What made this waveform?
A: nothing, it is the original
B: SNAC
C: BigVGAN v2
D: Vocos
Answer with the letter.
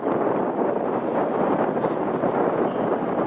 A